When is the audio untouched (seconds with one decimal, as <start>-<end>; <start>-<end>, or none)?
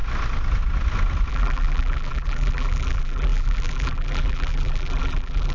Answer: 0.0-1.3